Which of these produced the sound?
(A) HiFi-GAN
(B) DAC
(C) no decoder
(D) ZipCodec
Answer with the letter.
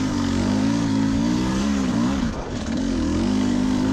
B